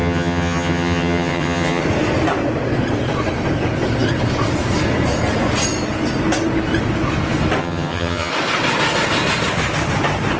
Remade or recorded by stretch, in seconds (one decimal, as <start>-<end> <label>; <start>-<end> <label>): 0.0-1.8 remade; 1.8-7.6 recorded; 7.6-8.3 remade; 8.3-10.4 recorded